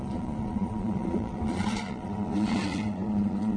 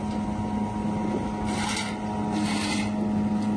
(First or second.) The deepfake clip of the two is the first